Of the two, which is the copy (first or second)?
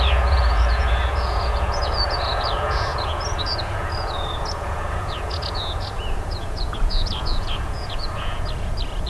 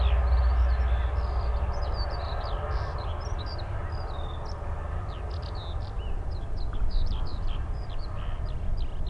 first